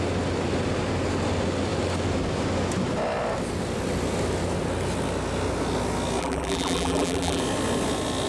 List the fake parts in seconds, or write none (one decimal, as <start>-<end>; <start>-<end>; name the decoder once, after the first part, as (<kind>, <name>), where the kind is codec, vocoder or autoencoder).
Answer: 6.2-7.4 (vocoder, BigVGAN v2)